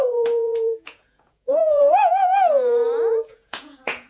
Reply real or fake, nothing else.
fake